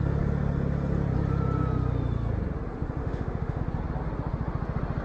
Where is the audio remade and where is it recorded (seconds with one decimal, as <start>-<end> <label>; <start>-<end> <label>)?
0.0-3.0 recorded; 3.0-3.6 remade; 3.6-5.0 recorded